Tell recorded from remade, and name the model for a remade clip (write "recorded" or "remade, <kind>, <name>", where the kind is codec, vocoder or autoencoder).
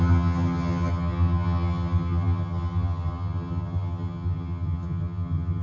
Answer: remade, vocoder, HiFi-GAN